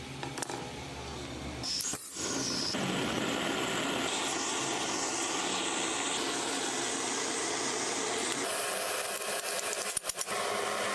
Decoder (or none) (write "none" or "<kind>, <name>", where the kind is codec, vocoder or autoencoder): none